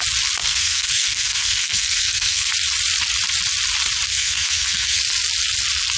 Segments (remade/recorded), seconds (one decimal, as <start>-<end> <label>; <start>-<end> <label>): 0.0-0.4 recorded; 0.4-2.5 remade; 2.5-4.1 recorded; 4.1-5.0 remade; 5.0-6.0 recorded